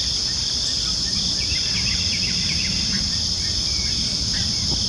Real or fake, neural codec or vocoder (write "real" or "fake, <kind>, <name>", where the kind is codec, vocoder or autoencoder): real